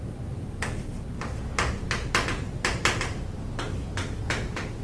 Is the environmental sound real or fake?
real